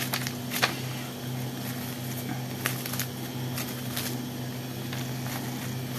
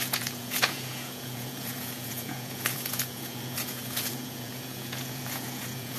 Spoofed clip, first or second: second